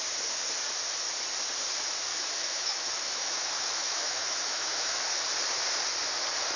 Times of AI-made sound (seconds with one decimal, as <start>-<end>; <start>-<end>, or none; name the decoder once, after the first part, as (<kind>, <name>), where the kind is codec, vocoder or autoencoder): 2.1-5.0 (autoencoder, DAC-VAE)

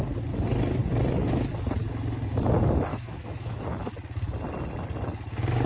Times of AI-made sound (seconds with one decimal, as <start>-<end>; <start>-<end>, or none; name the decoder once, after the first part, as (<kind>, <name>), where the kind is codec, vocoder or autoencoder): 2.9-3.6 (autoencoder, DAC-VAE)

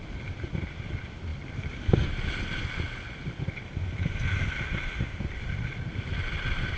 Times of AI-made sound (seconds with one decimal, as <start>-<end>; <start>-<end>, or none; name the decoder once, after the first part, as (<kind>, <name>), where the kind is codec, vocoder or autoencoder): none

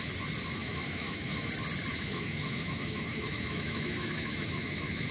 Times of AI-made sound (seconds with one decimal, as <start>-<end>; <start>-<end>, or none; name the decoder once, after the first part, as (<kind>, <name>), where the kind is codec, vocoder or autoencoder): 0.6-1.5 (autoencoder, DAC-VAE); 1.9-5.1

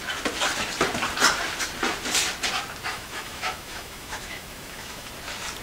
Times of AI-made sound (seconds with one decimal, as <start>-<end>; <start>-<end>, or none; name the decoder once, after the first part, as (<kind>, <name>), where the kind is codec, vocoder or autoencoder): 2.9-5.1 (autoencoder, DAC-VAE)

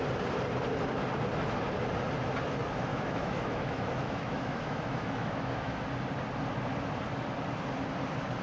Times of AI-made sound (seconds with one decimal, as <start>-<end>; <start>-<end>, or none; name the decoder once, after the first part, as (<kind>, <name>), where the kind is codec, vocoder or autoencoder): 2.9-5.8 (autoencoder, DAC-VAE)